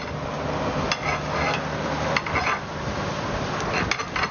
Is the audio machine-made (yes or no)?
no